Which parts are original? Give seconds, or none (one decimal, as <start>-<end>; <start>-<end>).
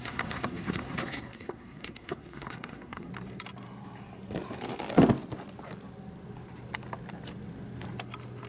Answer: 3.1-8.5